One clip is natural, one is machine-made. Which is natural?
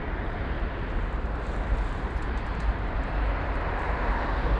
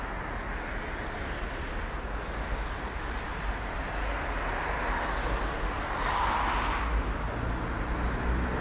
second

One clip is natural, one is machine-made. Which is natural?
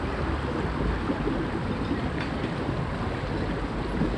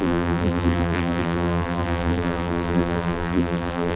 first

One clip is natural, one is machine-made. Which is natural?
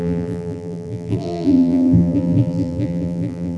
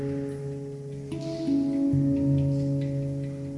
second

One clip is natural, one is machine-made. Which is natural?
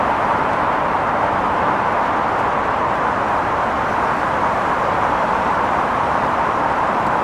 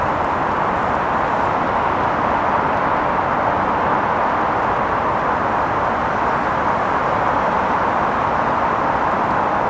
second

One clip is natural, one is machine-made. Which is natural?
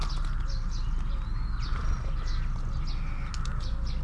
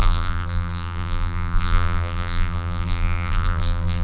first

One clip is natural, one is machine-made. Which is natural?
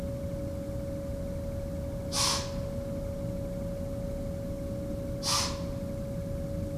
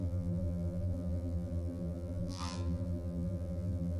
first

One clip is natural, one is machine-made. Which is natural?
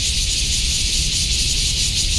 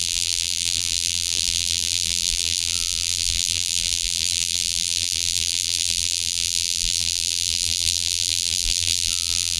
first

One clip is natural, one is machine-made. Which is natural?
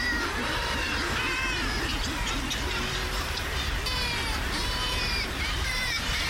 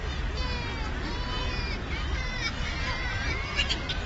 second